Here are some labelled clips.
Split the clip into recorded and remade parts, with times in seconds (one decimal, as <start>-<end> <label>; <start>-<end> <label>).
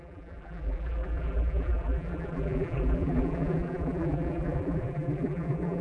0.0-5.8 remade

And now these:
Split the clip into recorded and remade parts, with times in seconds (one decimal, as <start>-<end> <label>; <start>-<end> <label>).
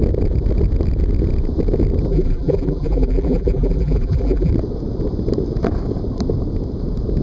0.0-2.1 recorded; 2.1-4.5 remade; 4.5-7.2 recorded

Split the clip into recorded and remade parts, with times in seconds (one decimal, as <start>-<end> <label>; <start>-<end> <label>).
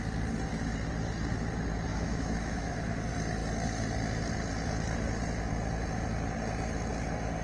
0.0-1.9 recorded; 1.9-3.0 remade; 3.0-7.4 recorded